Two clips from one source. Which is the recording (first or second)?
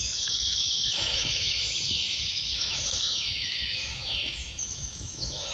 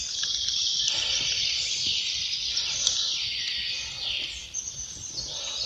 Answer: second